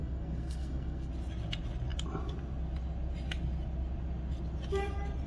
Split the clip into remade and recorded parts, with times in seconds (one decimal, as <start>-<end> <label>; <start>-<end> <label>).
0.0-1.1 remade; 1.1-5.3 recorded